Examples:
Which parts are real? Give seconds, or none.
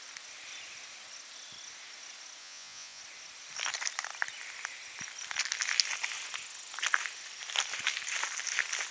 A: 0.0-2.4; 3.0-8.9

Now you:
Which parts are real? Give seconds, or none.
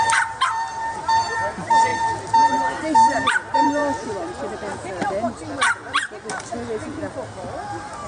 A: 1.9-2.7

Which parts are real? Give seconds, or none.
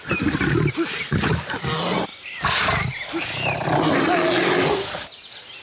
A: 0.0-2.1; 3.8-5.6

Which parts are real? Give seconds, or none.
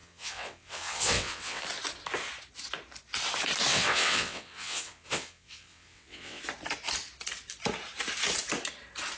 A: 1.6-3.7; 6.4-9.2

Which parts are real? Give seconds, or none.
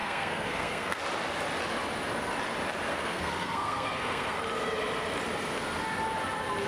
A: 1.0-2.9; 4.4-6.7